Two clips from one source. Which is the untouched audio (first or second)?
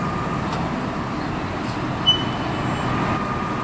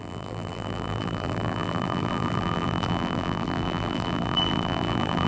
first